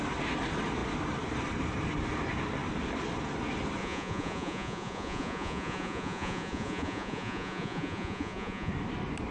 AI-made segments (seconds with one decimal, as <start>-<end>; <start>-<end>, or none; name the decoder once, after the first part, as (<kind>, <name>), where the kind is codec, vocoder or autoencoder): 3.8-8.7 (vocoder, Vocos)